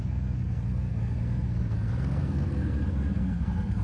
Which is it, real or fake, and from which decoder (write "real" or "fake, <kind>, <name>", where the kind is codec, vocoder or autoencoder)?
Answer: fake, codec, SNAC